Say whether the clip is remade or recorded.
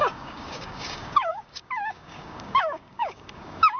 remade